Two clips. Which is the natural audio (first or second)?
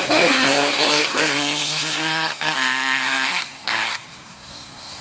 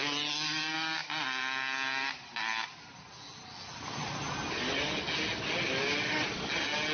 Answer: second